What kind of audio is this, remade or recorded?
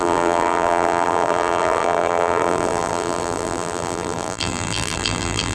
remade